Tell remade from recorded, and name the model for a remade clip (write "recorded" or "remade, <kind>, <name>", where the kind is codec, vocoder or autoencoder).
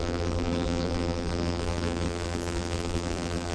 remade, vocoder, BigVGAN v2